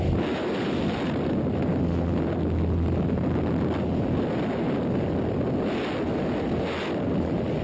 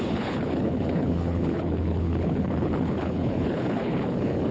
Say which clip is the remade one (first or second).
second